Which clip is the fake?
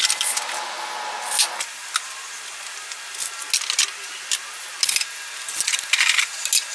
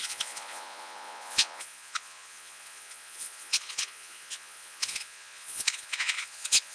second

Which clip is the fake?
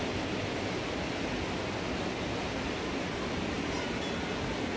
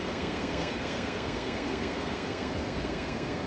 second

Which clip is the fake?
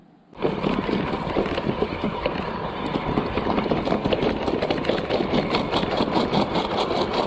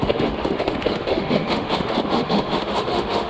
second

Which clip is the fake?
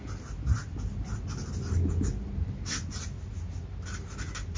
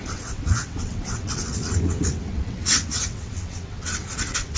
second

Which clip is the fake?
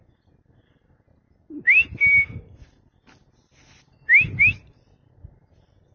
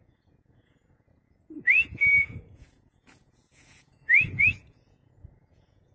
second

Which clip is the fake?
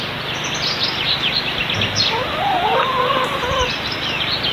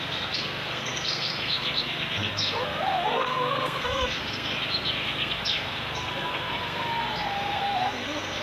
second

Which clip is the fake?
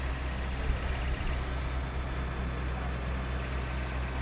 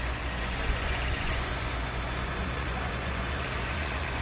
second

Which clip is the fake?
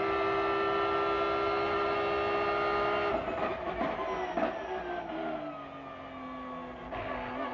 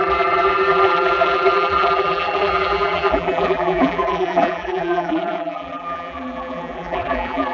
second